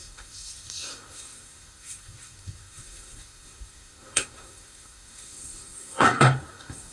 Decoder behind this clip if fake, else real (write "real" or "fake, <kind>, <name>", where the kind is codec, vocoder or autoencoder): fake, codec, SNAC